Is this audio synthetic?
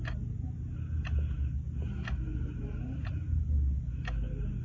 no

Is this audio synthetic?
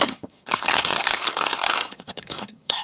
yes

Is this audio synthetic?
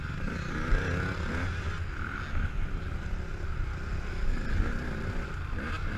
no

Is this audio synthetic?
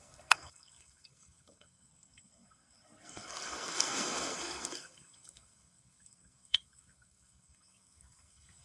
yes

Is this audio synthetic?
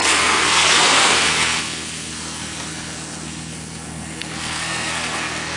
yes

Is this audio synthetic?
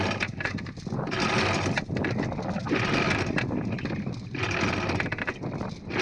no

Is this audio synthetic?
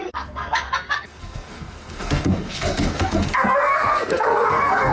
yes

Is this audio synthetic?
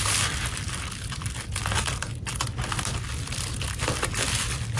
no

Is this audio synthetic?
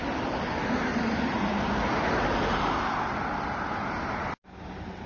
no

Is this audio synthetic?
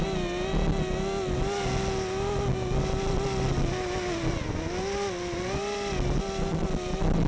no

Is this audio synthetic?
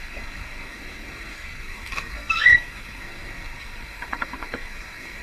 yes